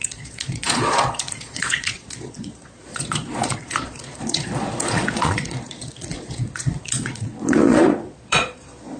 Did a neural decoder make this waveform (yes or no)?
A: yes